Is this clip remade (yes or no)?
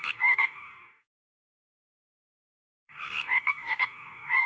yes